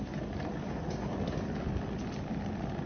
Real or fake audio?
fake